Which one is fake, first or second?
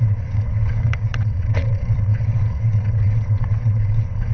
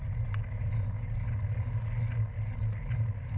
first